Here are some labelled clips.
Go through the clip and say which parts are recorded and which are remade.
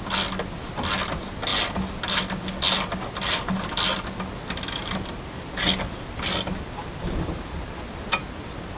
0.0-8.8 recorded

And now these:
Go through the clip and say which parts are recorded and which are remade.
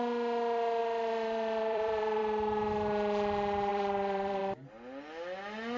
0.0-0.8 recorded; 0.8-2.2 remade; 2.2-3.7 recorded; 3.7-4.4 remade; 4.4-5.8 recorded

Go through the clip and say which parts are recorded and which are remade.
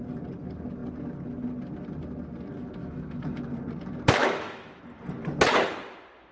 0.0-2.8 recorded; 2.8-3.4 remade; 3.4-4.2 recorded; 4.2-4.8 remade; 4.8-6.3 recorded